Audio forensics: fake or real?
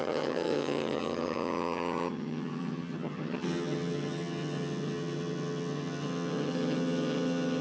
fake